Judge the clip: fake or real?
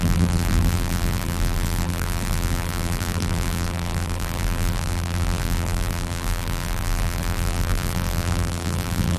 fake